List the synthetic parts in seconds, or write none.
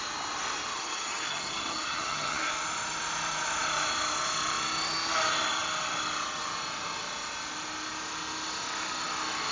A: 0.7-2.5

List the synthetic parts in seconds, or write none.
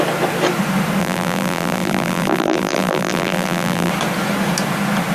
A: 1.0-3.9